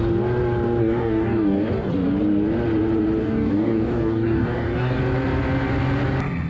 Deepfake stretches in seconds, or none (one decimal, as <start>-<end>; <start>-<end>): 0.8-1.9; 3.2-5.0